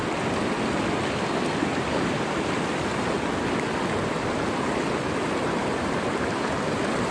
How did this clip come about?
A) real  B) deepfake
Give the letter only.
A